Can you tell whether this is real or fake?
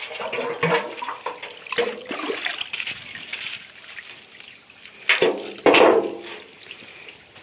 real